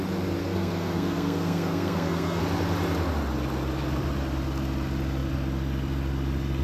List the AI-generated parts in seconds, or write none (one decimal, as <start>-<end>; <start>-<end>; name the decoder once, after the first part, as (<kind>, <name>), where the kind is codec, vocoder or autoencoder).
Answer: 0.4-2.4 (codec, SNAC)